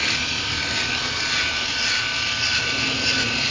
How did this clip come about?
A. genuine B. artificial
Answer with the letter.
A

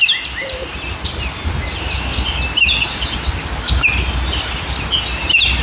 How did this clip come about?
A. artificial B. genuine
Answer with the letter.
B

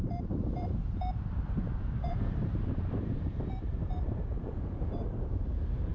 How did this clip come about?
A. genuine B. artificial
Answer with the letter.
B